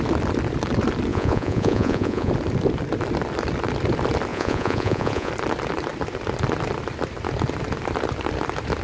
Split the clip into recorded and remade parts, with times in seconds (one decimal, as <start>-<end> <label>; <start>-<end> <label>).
0.0-1.1 recorded; 1.1-2.3 remade; 2.3-4.3 recorded; 4.3-5.3 remade; 5.3-8.8 recorded